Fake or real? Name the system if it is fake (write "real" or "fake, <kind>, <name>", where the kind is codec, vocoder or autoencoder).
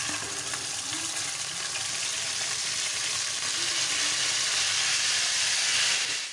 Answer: real